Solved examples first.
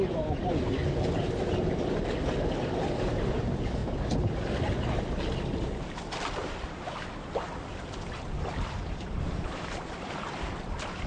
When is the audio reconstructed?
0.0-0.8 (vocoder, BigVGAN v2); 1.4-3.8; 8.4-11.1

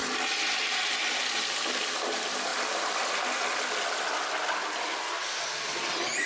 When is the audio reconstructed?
none